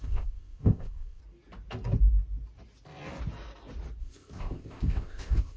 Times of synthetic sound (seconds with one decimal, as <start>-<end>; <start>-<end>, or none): 0.0-1.2; 4.0-5.6